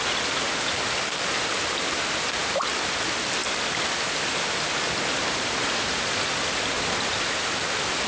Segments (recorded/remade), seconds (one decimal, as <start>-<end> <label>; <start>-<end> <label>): 0.0-8.1 recorded